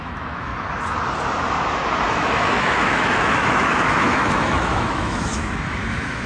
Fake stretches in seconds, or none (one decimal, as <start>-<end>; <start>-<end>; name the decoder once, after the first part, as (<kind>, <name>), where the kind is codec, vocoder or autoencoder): 0.0-0.5 (autoencoder, DAC-VAE); 2.1-6.3